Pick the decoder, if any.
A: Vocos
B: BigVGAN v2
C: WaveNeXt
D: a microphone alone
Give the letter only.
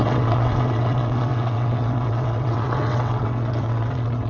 C